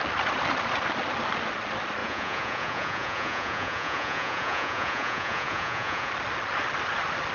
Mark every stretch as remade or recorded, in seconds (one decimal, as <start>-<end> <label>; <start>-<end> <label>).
0.0-2.0 recorded; 2.0-6.1 remade; 6.1-7.3 recorded